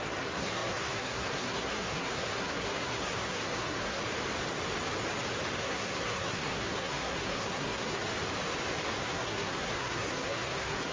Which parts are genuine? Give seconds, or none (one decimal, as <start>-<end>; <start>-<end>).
4.0-5.6; 8.0-9.0